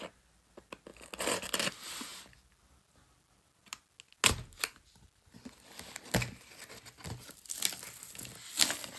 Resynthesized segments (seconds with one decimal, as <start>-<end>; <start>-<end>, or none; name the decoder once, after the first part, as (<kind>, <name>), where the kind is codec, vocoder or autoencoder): none

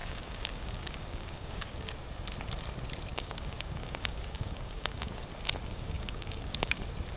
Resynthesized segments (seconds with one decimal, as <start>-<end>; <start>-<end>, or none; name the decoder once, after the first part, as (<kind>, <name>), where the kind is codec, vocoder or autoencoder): 0.0-1.9 (codec, DAC); 3.1-5.1; 5.7-6.8

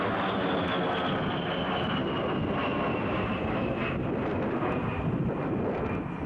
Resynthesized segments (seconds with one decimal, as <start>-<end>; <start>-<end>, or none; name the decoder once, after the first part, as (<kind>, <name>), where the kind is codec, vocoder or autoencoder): none

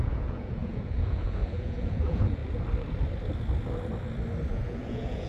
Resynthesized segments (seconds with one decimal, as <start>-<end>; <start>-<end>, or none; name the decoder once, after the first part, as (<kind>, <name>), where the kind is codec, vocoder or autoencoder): 0.0-2.4 (vocoder, Vocos); 4.5-5.3